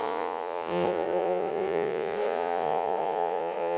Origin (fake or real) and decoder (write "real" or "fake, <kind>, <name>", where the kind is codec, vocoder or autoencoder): fake, vocoder, Vocos